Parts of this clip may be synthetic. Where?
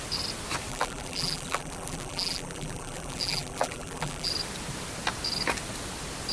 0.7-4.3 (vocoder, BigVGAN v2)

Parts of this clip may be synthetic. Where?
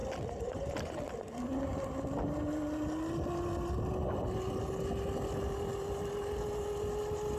0.0-2.0 (vocoder, BigVGAN v2)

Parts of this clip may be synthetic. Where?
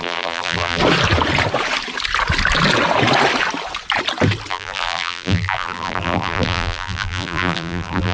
0.0-0.8 (vocoder, BigVGAN v2); 4.5-8.1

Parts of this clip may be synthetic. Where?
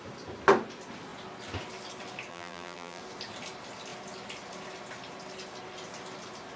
2.3-3.0 (vocoder, BigVGAN v2)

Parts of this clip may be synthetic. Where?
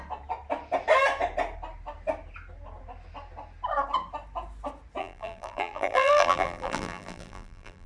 5.0-7.9 (vocoder, BigVGAN v2)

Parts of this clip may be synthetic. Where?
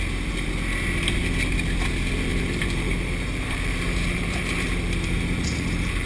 2.3-6.1 (vocoder, BigVGAN v2)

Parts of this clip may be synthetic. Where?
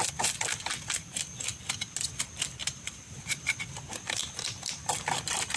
2.6-4.2 (vocoder, BigVGAN v2)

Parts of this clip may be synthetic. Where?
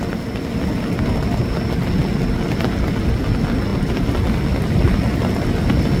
none